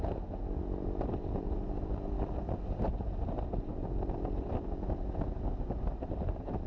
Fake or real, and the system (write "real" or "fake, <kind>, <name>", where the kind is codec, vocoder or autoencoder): fake, vocoder, BigVGAN v2